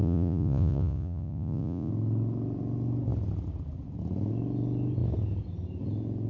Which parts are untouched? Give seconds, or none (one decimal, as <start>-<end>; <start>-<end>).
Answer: 1.9-6.3